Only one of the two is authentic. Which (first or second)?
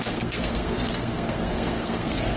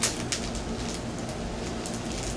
second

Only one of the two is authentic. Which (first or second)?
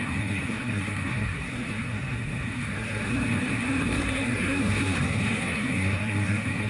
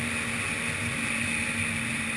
second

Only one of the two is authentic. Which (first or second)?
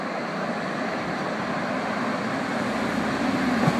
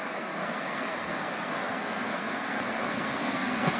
first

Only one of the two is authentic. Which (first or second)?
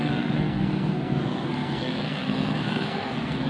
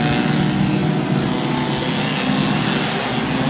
second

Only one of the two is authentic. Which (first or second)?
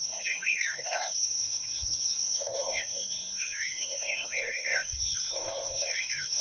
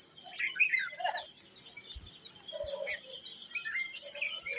second